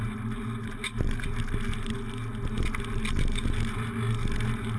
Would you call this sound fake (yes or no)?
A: no